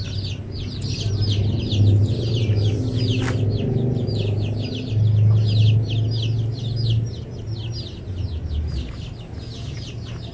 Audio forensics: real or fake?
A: real